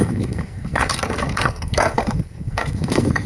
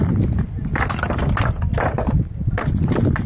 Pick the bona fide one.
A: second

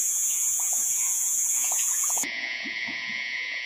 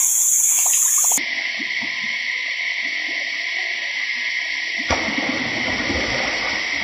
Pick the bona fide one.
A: second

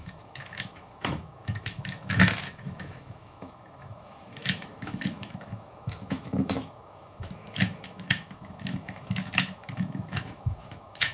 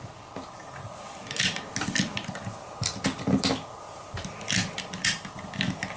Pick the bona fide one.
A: second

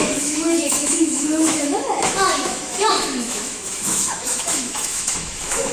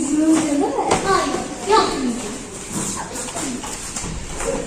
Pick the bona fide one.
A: second